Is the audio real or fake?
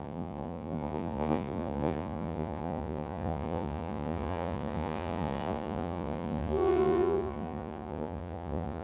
fake